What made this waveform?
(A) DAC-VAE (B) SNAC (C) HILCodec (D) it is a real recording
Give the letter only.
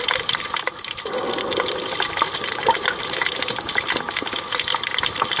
D